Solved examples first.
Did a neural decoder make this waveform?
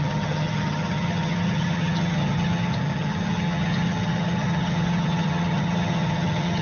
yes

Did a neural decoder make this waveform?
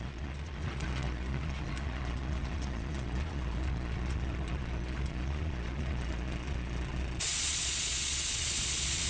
yes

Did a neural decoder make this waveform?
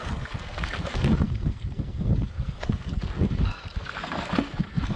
yes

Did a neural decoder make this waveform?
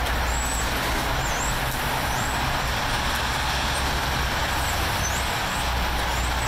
no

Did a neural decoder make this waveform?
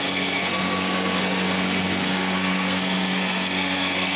yes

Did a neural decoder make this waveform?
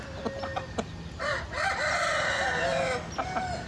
no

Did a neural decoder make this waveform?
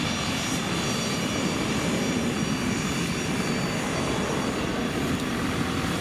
no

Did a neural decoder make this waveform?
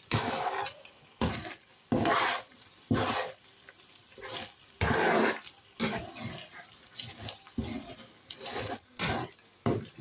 no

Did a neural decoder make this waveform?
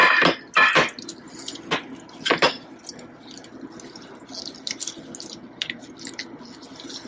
no